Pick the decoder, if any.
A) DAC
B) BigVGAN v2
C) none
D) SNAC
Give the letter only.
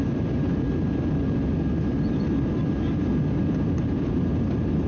C